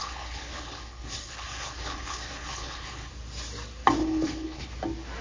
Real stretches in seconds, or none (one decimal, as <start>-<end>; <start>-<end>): 3.1-4.0; 4.7-5.2